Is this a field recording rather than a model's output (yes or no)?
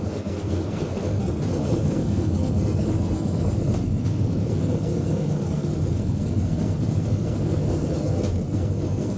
no